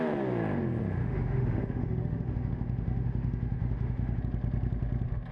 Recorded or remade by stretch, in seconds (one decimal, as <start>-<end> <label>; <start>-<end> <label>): 0.0-1.0 recorded; 1.0-4.2 remade; 4.2-5.3 recorded